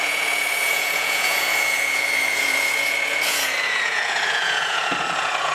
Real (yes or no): no